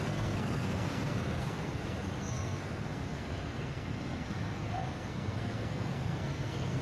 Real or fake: fake